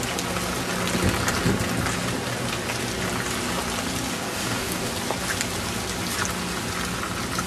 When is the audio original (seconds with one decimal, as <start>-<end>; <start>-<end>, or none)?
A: 0.0-4.1; 4.9-7.5